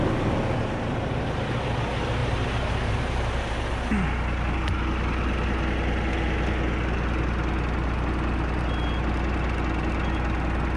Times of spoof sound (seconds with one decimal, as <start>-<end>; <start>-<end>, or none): 2.2-3.5